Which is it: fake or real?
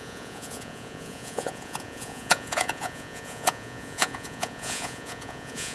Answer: fake